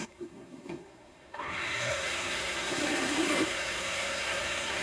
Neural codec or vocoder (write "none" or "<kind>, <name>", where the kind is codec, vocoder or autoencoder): codec, SNAC